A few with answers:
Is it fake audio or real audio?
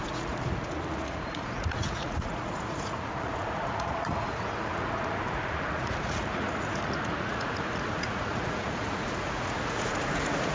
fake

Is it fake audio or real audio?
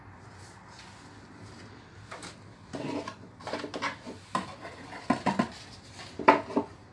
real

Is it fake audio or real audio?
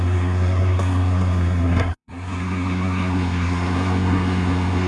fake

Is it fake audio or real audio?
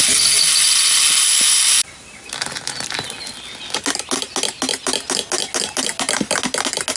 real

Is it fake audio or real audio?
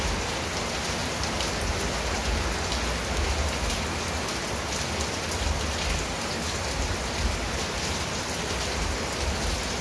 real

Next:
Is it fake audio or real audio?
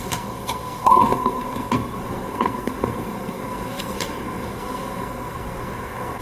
fake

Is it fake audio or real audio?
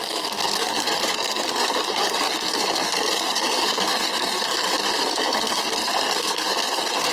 fake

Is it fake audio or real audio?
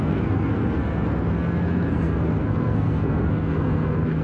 fake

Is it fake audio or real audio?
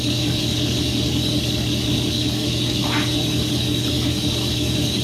fake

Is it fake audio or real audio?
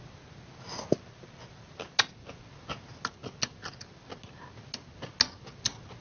real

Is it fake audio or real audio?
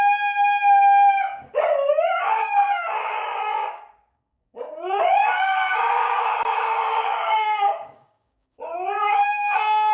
fake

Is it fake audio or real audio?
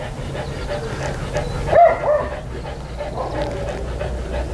real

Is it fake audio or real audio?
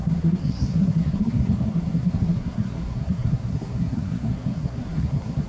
fake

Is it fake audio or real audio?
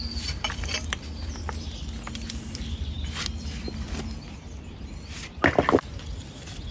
real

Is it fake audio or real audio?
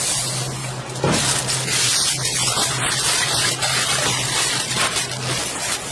real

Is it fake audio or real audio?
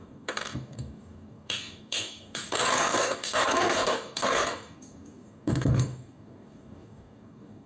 fake